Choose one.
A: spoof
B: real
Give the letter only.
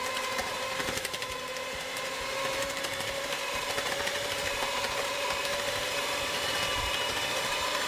A